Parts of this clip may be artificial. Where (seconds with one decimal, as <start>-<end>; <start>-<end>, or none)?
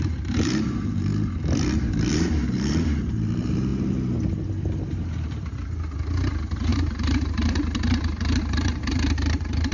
0.0-1.1; 2.1-3.7; 6.3-9.7